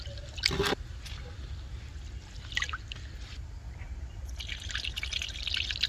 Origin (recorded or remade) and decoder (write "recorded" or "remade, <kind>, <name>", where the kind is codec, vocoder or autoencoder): recorded